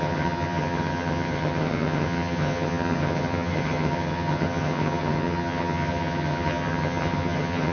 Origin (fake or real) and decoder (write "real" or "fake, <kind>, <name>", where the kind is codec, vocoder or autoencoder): fake, vocoder, HiFi-GAN